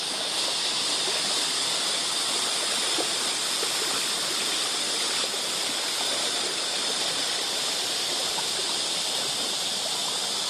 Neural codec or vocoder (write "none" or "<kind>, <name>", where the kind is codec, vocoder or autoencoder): none